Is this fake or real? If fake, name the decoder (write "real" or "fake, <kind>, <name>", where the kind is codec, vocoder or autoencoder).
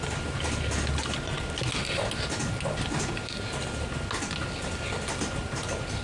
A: real